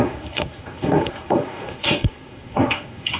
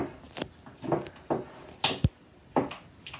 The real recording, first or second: second